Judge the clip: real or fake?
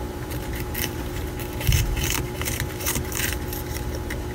fake